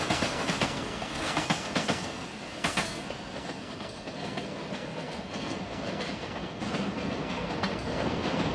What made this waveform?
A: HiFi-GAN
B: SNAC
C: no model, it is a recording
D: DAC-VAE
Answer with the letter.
B